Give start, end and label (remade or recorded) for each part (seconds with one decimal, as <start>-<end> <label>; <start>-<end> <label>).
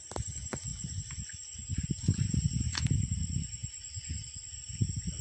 0.0-5.2 recorded